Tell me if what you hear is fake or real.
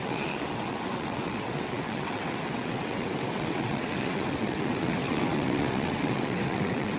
fake